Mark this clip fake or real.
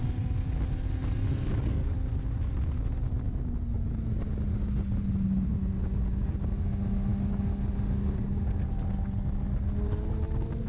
real